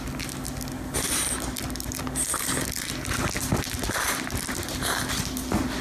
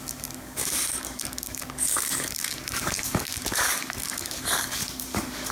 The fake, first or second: second